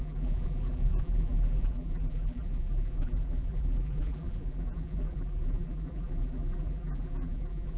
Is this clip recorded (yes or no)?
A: no